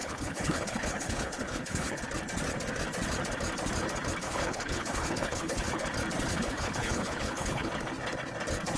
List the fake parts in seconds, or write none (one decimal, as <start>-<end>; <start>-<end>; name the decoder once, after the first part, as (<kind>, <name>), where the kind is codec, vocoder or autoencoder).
0.0-2.0 (codec, HILCodec); 4.2-5.8; 6.3-7.7